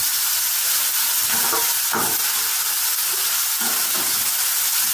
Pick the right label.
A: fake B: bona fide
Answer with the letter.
B